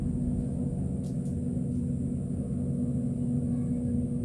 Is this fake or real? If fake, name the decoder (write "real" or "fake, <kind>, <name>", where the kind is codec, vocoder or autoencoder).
real